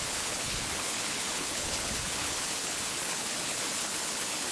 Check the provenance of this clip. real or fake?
fake